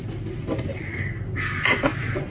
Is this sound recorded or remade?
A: recorded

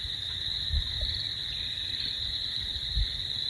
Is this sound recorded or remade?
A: recorded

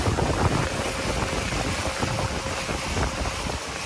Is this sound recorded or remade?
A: recorded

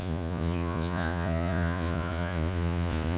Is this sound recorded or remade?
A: remade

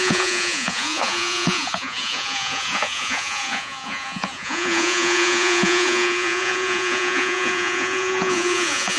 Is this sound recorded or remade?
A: remade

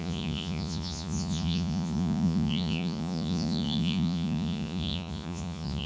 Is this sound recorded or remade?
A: remade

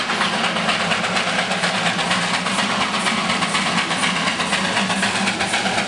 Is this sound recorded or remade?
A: recorded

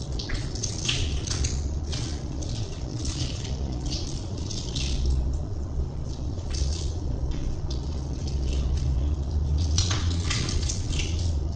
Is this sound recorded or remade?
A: remade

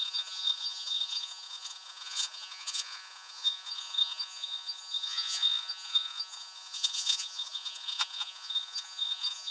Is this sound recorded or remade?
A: remade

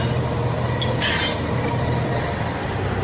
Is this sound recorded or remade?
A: recorded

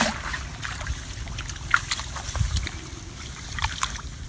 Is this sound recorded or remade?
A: recorded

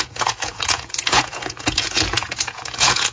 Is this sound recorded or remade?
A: remade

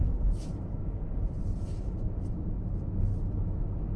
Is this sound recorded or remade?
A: recorded